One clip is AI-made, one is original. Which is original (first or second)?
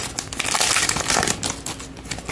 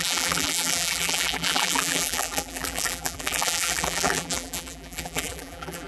first